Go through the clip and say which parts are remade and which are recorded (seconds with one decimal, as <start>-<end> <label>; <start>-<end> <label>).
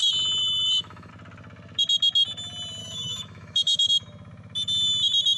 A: 0.0-0.4 recorded; 0.4-1.1 remade; 1.1-2.8 recorded; 2.8-3.9 remade; 3.9-5.4 recorded